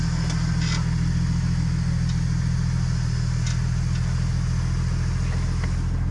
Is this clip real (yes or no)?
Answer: yes